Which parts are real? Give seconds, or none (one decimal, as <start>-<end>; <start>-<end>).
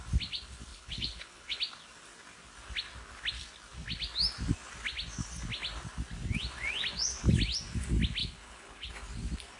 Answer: 0.0-0.7; 1.6-8.2; 8.9-9.6